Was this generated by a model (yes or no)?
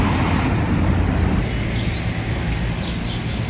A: no